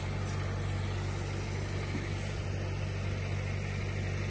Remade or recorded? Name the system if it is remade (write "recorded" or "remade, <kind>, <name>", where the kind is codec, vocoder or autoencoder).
recorded